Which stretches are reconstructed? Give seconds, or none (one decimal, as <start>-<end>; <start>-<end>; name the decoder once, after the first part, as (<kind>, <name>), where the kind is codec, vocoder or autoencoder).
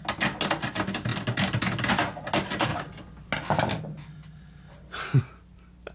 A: none